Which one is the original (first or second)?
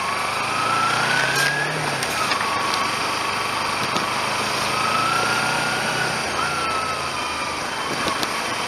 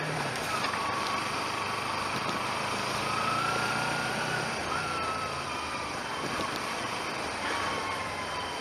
first